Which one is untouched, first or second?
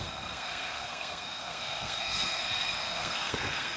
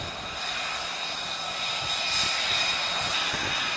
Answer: second